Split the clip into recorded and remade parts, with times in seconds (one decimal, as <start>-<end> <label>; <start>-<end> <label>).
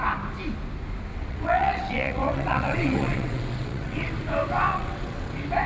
0.0-1.1 recorded; 1.1-4.1 remade; 4.1-4.7 recorded; 4.7-5.3 remade; 5.3-5.7 recorded